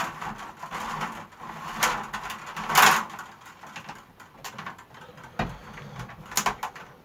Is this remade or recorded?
recorded